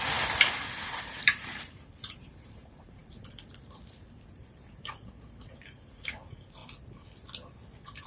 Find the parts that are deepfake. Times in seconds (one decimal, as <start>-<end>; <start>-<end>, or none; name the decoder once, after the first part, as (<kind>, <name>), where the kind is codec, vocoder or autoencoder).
0.0-6.6 (vocoder, BigVGAN v2)